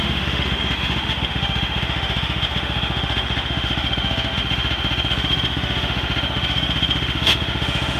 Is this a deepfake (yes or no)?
yes